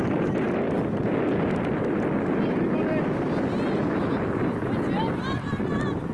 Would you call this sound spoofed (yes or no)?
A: no